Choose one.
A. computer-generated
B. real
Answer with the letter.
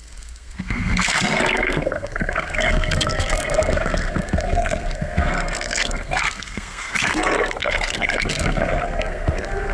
A